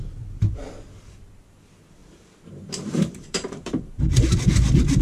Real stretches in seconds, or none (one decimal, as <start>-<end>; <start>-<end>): 0.0-2.0; 4.0-5.0

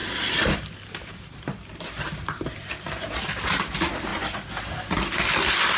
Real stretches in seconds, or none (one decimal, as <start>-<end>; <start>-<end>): 3.4-4.1; 4.6-5.8